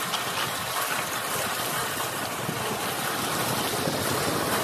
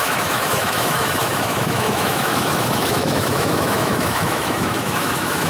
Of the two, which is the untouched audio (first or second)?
first